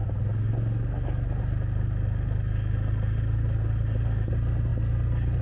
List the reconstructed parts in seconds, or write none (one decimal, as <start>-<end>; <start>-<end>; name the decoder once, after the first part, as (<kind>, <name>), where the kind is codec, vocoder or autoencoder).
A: none